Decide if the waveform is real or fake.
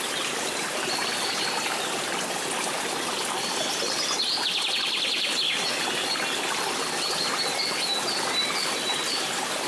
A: real